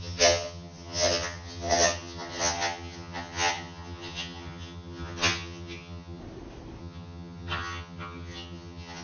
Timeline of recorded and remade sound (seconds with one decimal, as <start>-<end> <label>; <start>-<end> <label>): 0.0-6.2 remade; 6.2-6.8 recorded; 6.8-9.0 remade